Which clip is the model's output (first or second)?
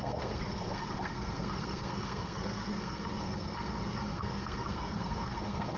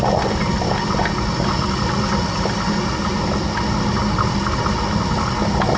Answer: first